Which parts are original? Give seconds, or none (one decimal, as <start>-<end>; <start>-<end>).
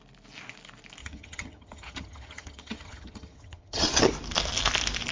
0.0-1.0; 4.1-5.1